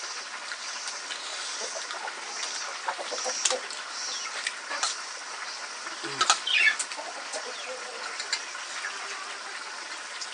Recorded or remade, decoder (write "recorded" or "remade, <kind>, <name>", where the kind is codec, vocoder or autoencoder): recorded